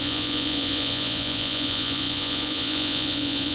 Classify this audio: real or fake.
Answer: fake